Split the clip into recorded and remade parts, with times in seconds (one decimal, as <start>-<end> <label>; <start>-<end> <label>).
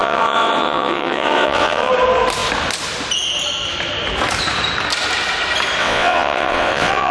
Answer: 0.0-1.9 remade; 1.9-5.8 recorded; 5.8-7.1 remade